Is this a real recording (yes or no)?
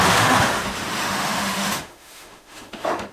no